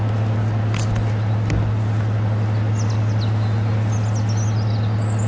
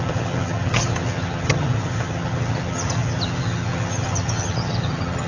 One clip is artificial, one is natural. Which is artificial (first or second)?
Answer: second